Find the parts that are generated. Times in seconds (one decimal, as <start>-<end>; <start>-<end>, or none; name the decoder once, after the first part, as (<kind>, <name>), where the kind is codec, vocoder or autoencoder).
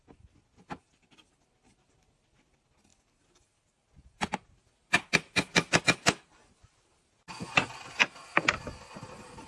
none